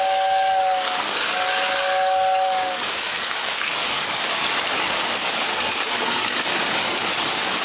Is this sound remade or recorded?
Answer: remade